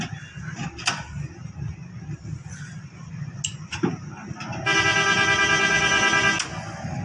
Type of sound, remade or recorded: recorded